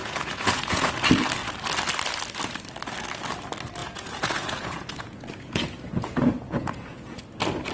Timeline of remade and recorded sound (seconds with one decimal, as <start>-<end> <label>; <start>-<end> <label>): 0.0-0.9 remade; 0.9-3.8 recorded; 3.8-7.2 remade; 7.2-7.7 recorded